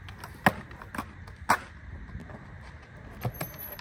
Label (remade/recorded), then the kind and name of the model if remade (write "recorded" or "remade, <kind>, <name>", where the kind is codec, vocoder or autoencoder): recorded